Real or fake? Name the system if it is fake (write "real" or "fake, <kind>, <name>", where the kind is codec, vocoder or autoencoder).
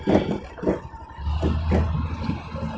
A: real